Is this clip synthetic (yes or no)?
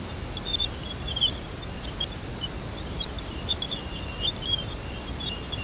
no